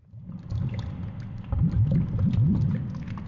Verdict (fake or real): real